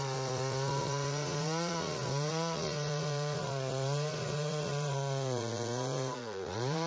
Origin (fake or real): fake